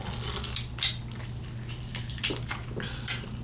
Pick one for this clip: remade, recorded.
recorded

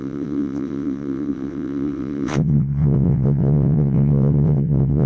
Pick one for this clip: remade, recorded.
remade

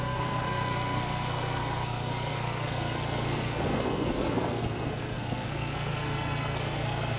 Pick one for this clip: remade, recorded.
remade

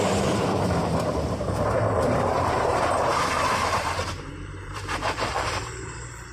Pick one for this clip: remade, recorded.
remade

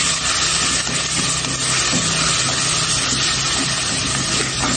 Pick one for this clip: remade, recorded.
recorded